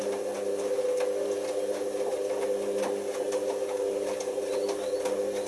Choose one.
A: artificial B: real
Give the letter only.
B